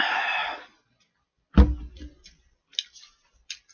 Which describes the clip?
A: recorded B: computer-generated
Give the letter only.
A